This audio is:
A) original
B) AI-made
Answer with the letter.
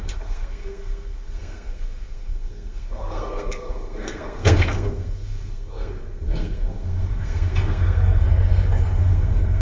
B